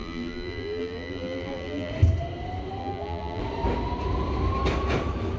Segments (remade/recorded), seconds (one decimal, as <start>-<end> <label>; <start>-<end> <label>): 0.0-1.9 remade; 1.9-2.8 recorded; 2.8-3.4 remade; 3.4-5.4 recorded